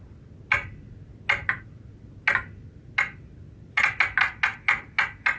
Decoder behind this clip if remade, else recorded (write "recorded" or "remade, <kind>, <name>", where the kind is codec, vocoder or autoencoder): recorded